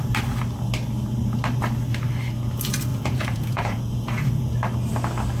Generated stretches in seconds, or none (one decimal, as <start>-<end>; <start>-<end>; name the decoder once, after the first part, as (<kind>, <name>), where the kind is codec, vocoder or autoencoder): 2.9-4.4 (vocoder, Vocos)